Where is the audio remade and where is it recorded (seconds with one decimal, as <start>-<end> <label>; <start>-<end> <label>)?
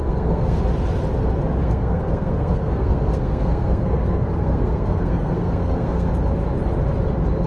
0.0-0.6 remade; 0.6-1.6 recorded; 1.6-6.1 remade; 6.1-7.5 recorded